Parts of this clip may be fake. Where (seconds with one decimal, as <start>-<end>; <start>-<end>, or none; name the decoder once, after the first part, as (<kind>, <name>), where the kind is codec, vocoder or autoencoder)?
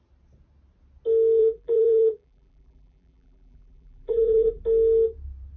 1.4-4.6 (vocoder, BigVGAN v2)